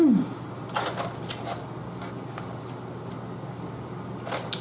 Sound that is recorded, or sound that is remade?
recorded